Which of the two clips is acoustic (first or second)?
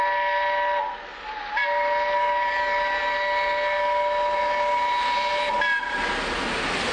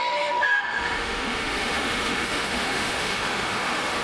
first